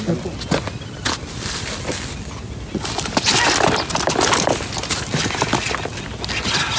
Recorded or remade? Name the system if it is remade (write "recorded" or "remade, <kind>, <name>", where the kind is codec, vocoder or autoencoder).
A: recorded